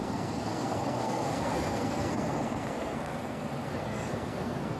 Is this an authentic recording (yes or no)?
no